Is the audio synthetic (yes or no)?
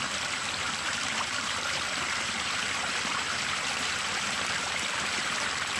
yes